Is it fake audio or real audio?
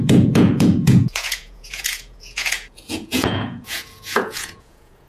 fake